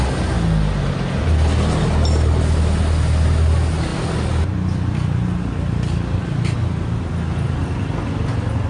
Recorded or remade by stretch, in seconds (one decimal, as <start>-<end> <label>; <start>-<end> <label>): 0.0-8.7 recorded